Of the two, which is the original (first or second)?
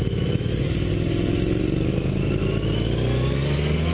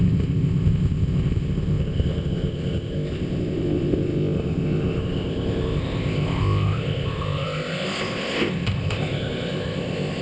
first